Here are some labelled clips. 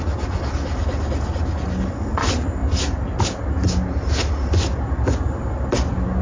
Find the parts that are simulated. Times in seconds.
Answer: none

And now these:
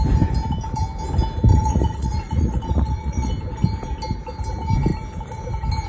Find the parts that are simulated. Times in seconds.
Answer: 1.5-3.3 (vocoder, Vocos)